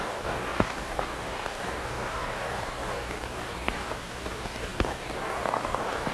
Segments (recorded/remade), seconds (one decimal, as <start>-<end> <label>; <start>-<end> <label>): 0.0-6.1 remade